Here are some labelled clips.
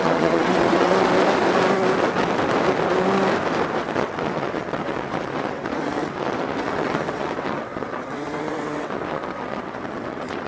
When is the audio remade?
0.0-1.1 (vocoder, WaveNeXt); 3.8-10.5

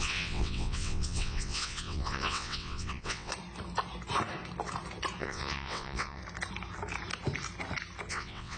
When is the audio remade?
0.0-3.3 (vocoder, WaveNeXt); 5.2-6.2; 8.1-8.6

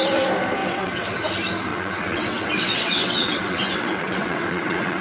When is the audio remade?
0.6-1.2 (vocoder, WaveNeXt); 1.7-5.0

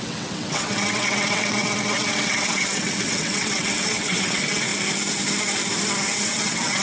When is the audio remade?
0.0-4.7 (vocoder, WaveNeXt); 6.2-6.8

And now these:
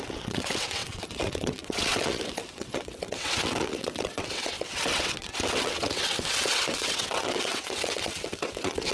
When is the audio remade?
0.0-8.9 (vocoder, WaveNeXt)

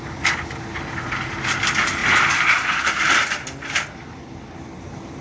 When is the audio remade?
none

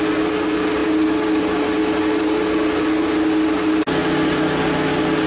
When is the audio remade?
none

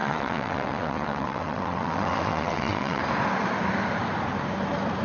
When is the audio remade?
0.0-3.0 (vocoder, WaveNeXt)